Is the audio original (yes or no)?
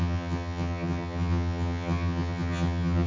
no